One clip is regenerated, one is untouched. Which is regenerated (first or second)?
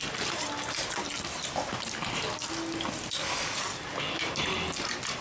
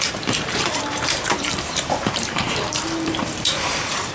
second